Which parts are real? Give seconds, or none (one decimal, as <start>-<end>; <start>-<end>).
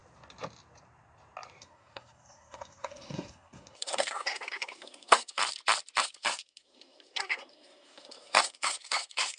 0.0-1.6; 5.4-6.0